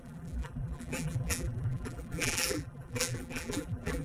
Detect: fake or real fake